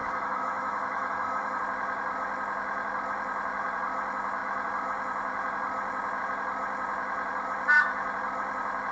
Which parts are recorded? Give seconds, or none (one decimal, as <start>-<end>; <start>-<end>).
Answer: 1.6-8.9

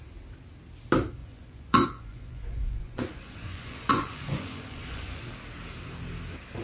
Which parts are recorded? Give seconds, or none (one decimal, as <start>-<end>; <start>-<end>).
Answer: 0.0-1.2; 5.2-6.6

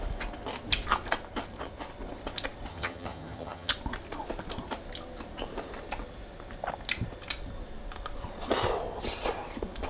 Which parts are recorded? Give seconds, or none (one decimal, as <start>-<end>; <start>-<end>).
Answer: 0.0-2.7; 3.7-9.9

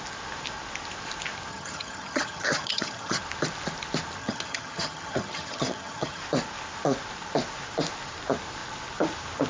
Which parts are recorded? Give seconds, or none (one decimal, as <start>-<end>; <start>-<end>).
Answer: 0.0-1.5; 3.2-4.2; 6.2-9.5

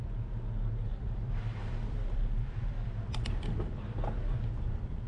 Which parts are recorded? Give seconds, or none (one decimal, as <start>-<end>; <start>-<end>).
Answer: 0.0-0.9; 4.0-5.1

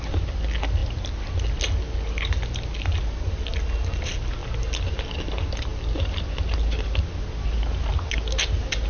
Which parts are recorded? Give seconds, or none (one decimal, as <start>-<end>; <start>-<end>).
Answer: 0.0-8.9